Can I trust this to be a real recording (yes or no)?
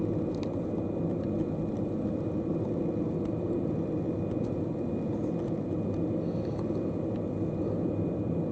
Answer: yes